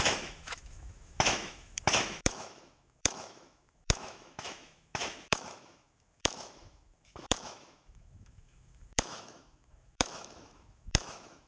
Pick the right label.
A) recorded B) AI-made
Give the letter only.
B